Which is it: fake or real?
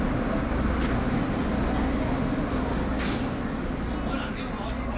real